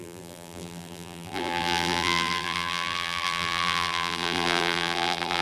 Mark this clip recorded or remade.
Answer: remade